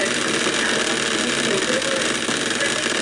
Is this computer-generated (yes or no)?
no